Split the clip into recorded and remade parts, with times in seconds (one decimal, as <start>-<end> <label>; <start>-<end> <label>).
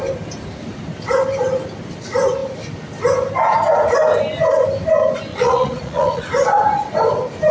0.0-5.3 recorded; 5.3-6.2 remade; 6.2-7.5 recorded